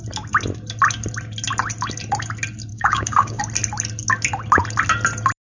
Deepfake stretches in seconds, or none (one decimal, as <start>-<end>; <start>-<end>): 2.7-3.4